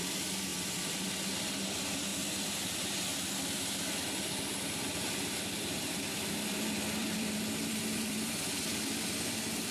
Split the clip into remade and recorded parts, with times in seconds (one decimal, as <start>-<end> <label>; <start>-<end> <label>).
0.0-2.1 remade; 2.1-2.6 recorded; 2.6-3.1 remade; 3.1-4.5 recorded; 4.5-9.7 remade